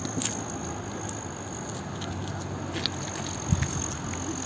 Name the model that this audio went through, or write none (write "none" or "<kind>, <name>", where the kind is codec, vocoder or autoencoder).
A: none